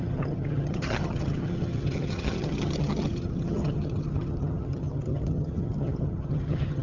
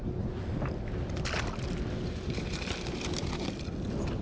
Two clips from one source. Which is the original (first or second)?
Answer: second